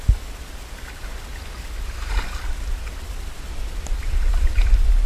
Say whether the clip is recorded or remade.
recorded